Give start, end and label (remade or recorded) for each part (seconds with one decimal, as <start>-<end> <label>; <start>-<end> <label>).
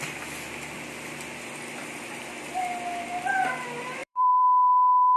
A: 0.0-4.0 recorded; 4.0-5.2 remade